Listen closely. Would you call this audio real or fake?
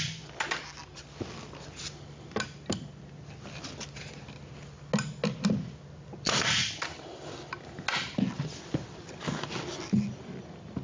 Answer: real